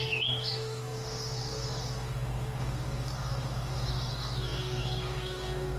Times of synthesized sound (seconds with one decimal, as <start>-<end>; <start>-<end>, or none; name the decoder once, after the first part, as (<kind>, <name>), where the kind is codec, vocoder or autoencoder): 0.0-5.8 (codec, DAC)